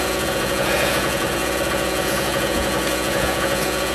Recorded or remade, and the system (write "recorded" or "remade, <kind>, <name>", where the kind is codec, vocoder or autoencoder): remade, vocoder, Vocos